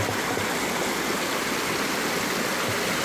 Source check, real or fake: real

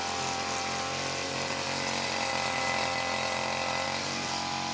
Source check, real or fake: real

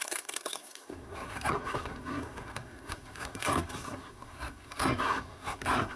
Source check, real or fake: fake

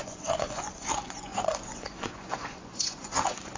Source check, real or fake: fake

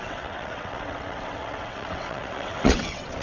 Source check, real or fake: fake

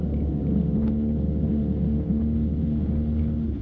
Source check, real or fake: real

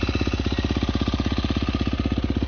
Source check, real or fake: real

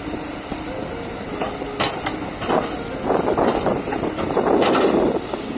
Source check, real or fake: real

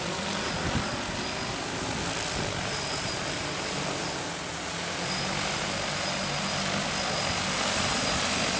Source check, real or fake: real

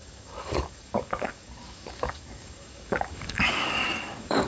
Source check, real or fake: fake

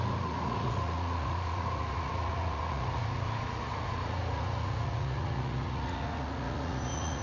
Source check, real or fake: fake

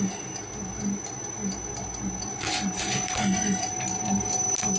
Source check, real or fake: real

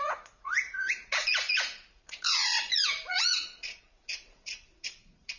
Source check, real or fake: fake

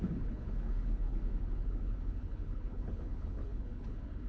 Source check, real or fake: fake